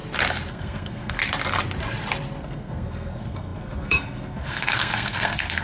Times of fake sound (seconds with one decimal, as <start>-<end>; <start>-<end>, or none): 0.5-1.2; 2.4-5.6